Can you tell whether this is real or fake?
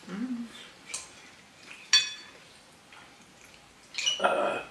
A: real